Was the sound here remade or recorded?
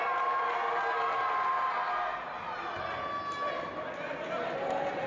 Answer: recorded